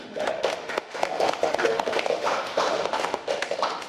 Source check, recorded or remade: remade